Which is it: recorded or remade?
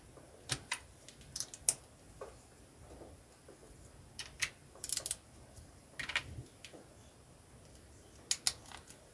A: recorded